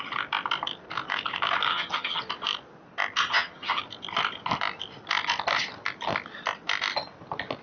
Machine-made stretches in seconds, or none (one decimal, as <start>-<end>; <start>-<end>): 1.7-2.2; 3.3-3.8